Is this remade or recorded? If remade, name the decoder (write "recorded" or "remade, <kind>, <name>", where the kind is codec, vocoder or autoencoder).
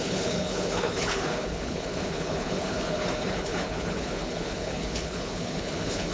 remade, codec, HILCodec